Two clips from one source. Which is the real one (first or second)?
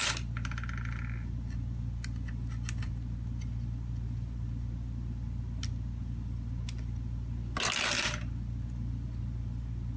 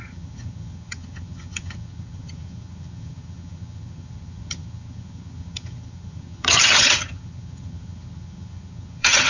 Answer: first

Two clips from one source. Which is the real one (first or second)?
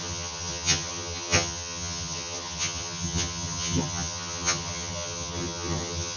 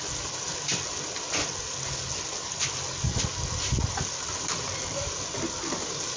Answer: second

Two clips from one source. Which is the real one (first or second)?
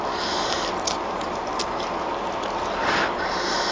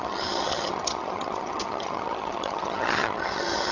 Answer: first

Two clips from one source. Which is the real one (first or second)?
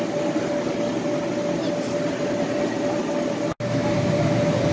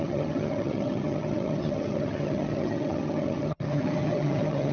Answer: first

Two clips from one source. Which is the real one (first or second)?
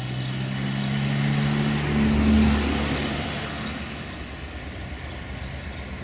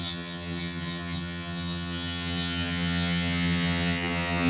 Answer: first